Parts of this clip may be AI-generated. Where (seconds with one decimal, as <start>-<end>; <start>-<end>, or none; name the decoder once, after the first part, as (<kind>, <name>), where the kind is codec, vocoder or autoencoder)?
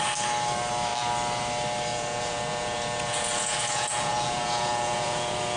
1.9-5.6 (vocoder, Vocos)